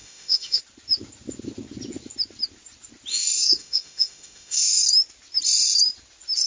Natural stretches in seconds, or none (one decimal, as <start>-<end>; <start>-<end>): 0.6-3.1; 4.8-6.5